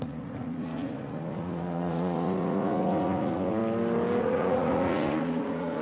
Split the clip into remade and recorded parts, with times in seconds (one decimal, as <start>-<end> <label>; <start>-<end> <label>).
0.0-3.6 remade; 3.6-4.2 recorded; 4.2-5.8 remade